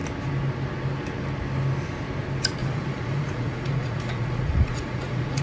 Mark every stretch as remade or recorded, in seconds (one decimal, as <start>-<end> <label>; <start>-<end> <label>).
0.0-2.6 recorded; 2.6-5.4 remade